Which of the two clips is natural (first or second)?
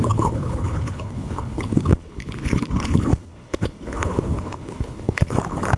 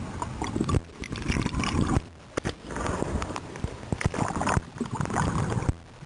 second